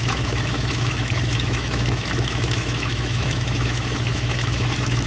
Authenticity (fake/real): fake